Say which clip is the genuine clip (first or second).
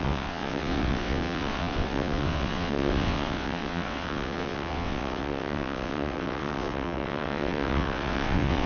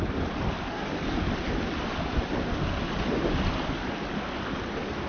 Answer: second